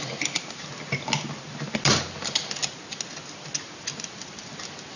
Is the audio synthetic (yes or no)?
no